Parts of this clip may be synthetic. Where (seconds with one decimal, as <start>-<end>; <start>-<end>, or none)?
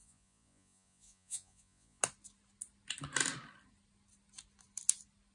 0.0-2.0